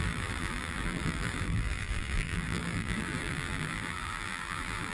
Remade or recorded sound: remade